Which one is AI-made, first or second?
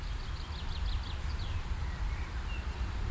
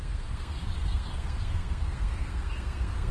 second